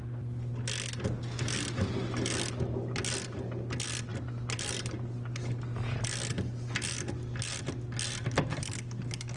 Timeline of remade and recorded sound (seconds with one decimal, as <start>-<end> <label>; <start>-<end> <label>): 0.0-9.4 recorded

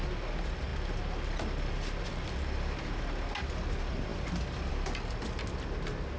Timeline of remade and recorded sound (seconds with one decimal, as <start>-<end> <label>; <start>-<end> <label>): 0.0-6.2 recorded

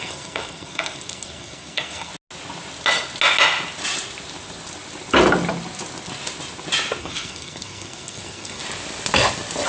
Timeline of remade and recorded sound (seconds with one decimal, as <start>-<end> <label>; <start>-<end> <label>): 0.0-2.1 remade; 2.1-7.0 recorded; 7.0-8.6 remade; 8.6-9.7 recorded

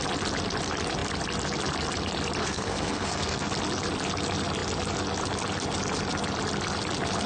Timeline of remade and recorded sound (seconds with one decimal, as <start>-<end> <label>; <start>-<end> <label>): 0.0-2.4 recorded; 2.4-3.5 remade; 3.5-7.3 recorded